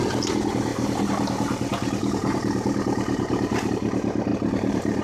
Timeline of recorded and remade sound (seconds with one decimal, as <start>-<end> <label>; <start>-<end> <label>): 0.0-0.7 recorded; 0.7-3.7 remade; 3.7-4.3 recorded; 4.3-5.0 remade